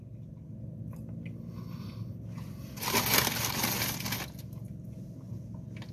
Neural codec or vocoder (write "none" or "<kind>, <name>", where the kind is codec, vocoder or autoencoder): none